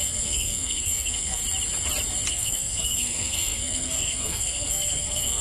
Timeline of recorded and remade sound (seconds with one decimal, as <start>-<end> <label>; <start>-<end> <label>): 0.0-1.4 remade; 1.4-2.3 recorded; 2.3-5.4 remade